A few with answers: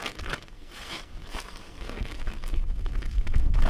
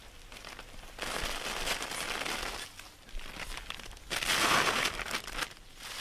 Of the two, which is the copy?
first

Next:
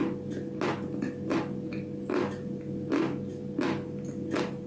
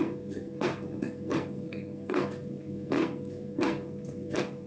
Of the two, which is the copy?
second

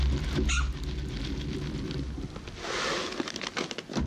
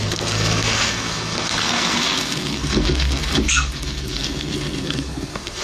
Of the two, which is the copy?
second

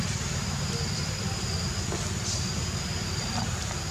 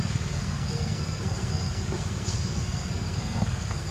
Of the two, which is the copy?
second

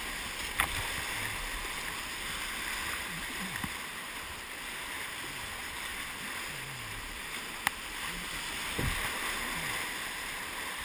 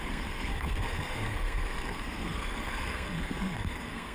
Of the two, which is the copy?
second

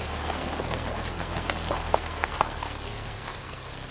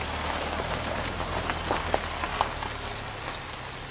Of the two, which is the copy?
first